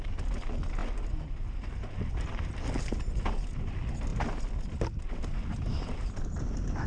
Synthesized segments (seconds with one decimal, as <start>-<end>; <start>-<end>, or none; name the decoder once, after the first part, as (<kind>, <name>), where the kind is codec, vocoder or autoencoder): none